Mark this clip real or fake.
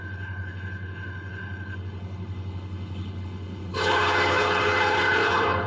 fake